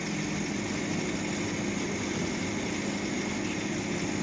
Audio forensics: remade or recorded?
recorded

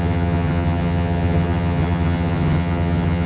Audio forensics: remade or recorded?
remade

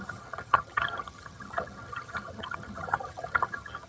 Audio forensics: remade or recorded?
remade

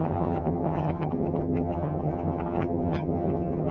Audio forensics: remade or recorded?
remade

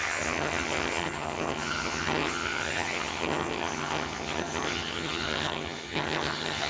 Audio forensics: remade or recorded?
remade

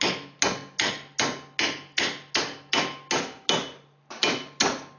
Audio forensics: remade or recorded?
recorded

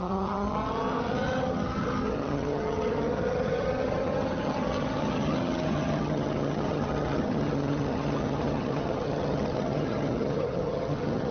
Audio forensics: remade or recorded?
remade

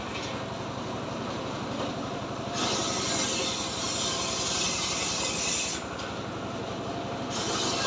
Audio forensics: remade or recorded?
recorded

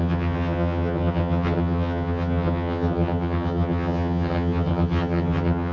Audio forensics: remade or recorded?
remade